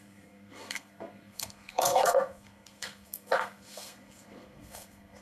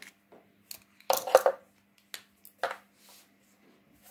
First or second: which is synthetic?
first